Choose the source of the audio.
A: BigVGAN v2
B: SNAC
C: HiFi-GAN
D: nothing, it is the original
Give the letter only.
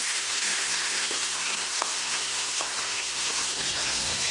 B